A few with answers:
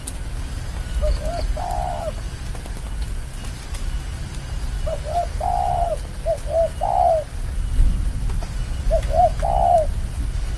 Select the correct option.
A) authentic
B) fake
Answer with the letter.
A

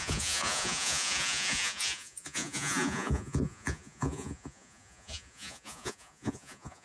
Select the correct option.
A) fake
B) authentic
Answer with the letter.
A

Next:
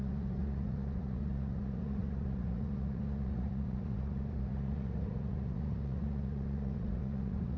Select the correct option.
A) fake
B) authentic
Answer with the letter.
A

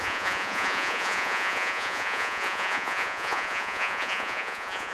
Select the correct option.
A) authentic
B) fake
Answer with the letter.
B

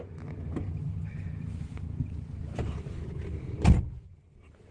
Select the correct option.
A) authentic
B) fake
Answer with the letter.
A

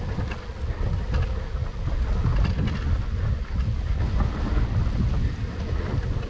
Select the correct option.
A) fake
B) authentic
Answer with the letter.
B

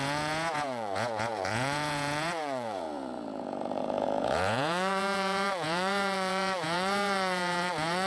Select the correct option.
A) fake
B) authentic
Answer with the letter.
A